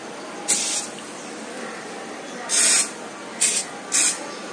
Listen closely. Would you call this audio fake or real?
real